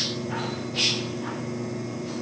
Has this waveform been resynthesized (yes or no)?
no